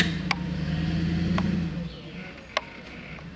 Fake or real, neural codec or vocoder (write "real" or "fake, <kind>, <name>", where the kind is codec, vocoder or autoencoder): real